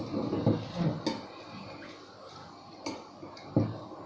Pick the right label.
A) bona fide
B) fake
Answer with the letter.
A